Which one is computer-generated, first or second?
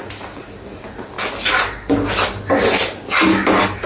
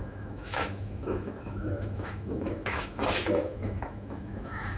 second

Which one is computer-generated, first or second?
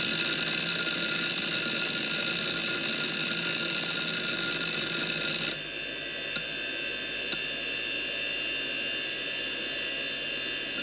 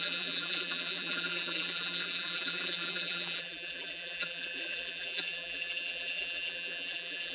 second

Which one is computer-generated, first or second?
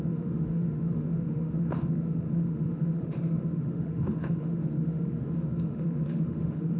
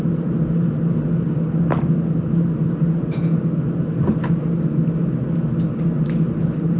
first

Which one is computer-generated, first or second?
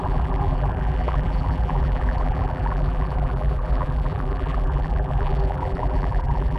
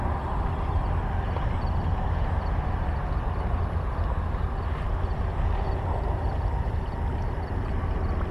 first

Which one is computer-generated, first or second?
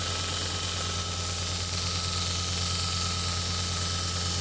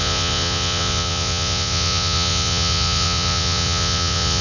second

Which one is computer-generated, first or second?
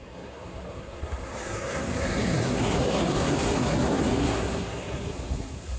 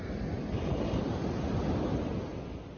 first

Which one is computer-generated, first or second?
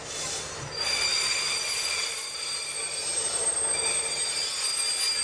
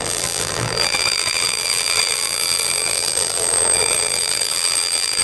second